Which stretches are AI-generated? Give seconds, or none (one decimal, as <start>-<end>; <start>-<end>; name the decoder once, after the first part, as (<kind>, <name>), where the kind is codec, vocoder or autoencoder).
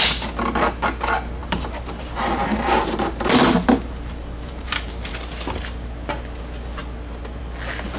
1.4-5.1 (vocoder, BigVGAN v2)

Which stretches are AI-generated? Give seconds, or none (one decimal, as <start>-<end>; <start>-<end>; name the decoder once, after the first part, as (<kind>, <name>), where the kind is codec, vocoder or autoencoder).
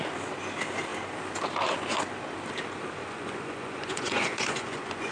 3.0-5.1 (vocoder, Vocos)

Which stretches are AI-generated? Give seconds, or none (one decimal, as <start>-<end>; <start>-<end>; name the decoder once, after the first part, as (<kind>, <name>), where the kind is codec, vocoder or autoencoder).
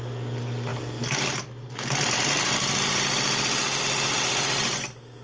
none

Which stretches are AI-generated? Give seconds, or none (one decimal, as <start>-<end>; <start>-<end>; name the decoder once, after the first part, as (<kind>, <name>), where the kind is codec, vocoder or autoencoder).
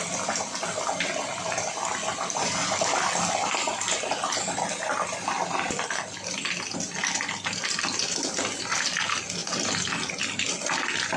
none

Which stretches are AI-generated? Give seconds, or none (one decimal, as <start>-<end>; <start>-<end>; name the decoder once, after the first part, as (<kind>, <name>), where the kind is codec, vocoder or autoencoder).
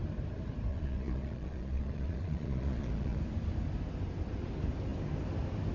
0.7-3.2 (vocoder, Vocos)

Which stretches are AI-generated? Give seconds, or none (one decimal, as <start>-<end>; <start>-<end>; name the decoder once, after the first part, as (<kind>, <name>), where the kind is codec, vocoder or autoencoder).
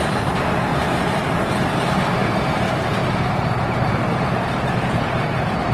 3.0-5.2 (vocoder, BigVGAN v2)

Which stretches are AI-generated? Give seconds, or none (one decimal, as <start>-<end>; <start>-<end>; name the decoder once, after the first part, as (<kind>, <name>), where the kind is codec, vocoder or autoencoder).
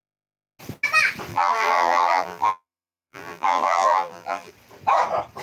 1.3-4.5 (vocoder, BigVGAN v2)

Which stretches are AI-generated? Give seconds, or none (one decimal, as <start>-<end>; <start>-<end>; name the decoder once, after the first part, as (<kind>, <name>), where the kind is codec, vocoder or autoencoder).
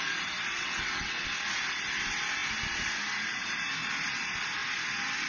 0.6-1.2 (vocoder, WaveNeXt)